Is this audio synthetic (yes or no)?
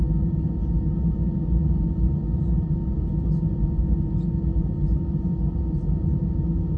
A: yes